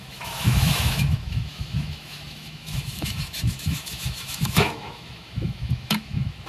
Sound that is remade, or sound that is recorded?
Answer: remade